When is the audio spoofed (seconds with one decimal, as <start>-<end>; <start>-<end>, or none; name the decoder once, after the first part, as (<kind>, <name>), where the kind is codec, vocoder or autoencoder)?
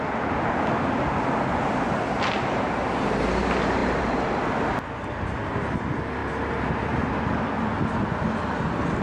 3.8-4.5 (vocoder, BigVGAN v2); 6.2-7.4